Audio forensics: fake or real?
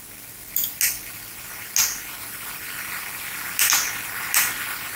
real